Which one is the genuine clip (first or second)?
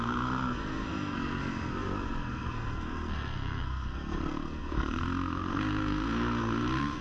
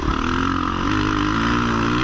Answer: second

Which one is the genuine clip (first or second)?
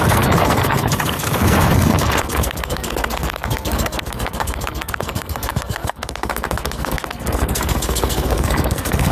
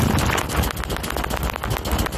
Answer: second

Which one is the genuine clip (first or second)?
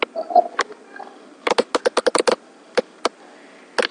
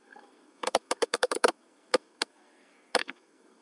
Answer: first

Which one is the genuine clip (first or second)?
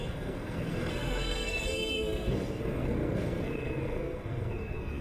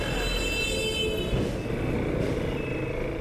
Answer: second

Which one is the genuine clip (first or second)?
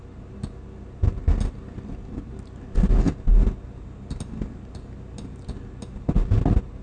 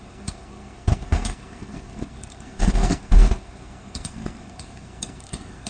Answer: first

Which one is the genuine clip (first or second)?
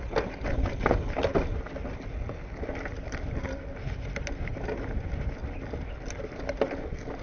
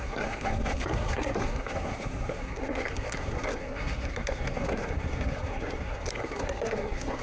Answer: first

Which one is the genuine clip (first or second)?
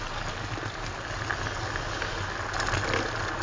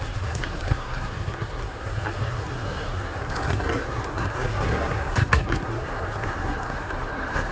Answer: first